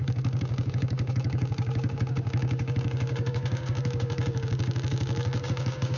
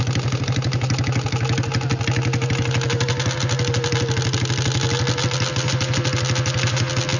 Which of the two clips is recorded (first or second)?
second